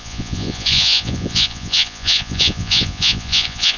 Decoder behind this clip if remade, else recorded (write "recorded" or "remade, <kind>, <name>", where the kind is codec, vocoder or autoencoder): remade, vocoder, Vocos